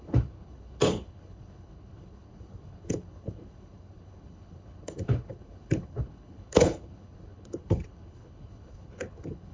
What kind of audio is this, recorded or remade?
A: remade